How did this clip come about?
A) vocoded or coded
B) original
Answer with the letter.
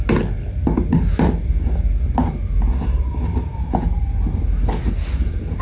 B